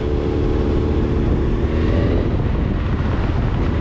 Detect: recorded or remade recorded